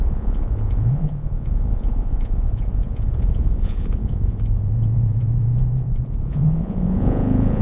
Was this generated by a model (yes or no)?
yes